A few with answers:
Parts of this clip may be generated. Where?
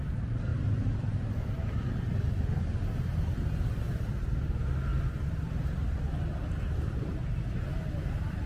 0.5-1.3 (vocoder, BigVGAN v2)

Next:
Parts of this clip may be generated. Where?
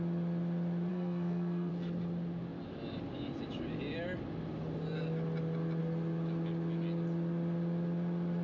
0.9-1.7 (codec, SNAC)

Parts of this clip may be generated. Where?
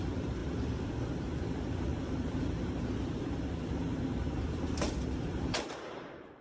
0.0-6.4 (vocoder, BigVGAN v2)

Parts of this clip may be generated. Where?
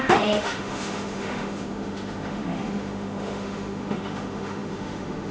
0.0-5.3 (autoencoder, DAC-VAE)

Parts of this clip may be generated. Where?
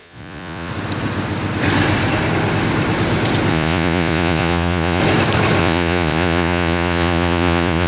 0.0-0.7 (vocoder, Vocos); 3.5-5.0; 5.6-7.9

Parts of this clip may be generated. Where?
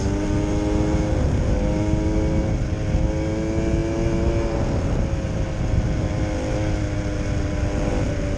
none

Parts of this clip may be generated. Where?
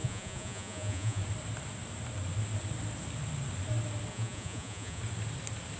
0.0-1.2 (vocoder, Vocos); 4.1-5.0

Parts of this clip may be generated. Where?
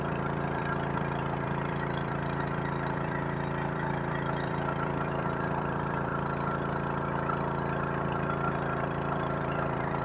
0.0-6.1 (vocoder, BigVGAN v2); 8.0-10.0